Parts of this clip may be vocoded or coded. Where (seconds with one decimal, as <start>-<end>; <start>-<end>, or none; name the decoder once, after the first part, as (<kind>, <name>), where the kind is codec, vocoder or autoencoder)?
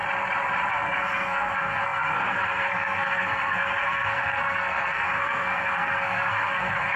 0.7-7.0 (codec, SNAC)